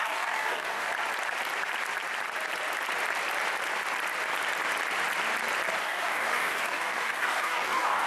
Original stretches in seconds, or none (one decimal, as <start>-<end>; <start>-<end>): 0.9-5.8